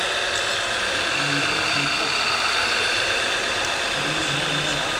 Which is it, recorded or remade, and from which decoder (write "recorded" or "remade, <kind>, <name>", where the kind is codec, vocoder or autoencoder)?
remade, vocoder, BigVGAN v2